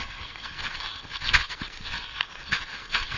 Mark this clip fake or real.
fake